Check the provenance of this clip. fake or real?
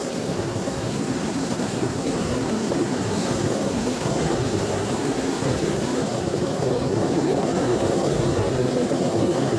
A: fake